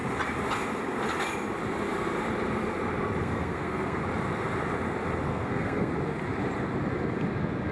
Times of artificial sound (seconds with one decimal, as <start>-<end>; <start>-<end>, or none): 3.2-4.0; 5.3-5.9